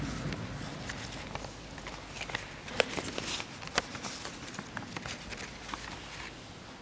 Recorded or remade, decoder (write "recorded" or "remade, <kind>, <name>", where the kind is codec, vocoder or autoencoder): recorded